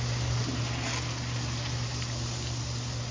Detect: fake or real real